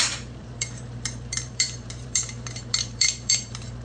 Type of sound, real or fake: fake